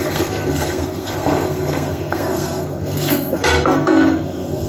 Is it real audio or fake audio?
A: fake